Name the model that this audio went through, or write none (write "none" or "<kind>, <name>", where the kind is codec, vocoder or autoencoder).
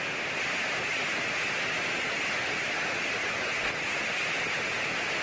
none